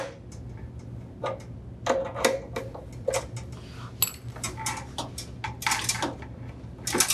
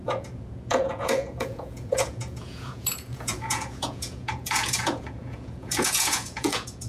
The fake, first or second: second